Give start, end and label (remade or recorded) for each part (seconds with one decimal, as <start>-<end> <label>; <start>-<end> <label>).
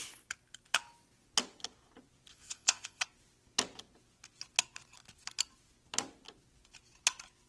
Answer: 0.0-2.3 recorded; 2.3-3.0 remade; 3.0-7.5 recorded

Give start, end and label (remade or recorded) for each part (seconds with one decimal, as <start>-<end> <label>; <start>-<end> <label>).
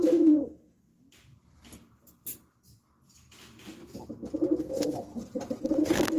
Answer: 0.0-0.9 remade; 0.9-4.6 recorded; 4.6-5.1 remade; 5.1-5.8 recorded; 5.8-6.2 remade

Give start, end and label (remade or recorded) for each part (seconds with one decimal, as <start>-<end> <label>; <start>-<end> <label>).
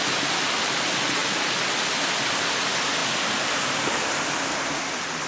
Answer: 0.0-5.3 recorded